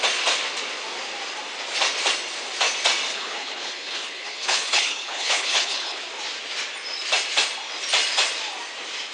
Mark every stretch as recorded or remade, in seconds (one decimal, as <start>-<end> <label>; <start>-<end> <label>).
0.0-3.1 recorded; 3.1-6.0 remade; 6.0-9.1 recorded